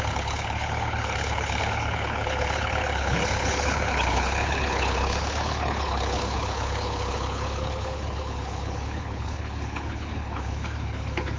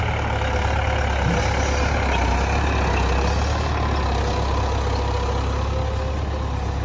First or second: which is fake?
first